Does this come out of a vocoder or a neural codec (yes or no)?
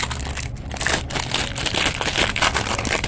no